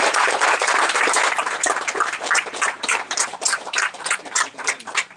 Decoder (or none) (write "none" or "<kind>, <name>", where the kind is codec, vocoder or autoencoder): vocoder, BigVGAN v2